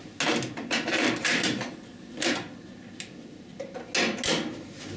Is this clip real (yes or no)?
yes